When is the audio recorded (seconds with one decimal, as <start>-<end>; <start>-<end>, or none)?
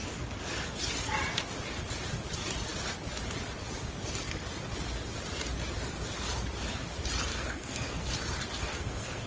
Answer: 0.0-7.3; 8.1-8.7